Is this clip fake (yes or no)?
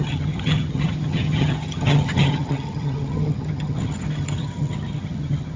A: yes